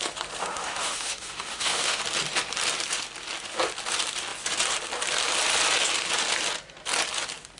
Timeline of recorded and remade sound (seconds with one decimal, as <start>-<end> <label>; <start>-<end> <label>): 0.0-0.4 recorded; 0.4-2.0 remade; 2.0-7.6 recorded